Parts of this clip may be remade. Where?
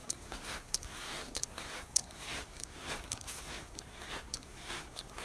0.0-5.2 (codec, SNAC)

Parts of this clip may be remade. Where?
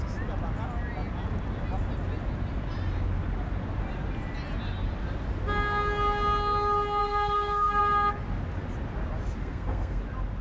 7.0-7.8 (codec, SNAC); 9.4-10.0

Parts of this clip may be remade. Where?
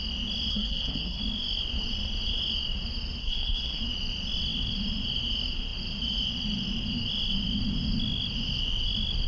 0.5-1.2 (codec, SNAC); 3.2-3.8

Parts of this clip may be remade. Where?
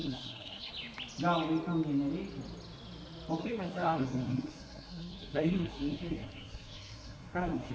0.0-0.7 (codec, SNAC); 3.4-7.7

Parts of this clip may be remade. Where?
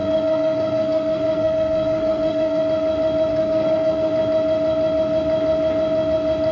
0.0-2.6 (codec, SNAC); 3.3-4.1